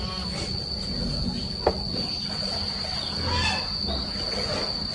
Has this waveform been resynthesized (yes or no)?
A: no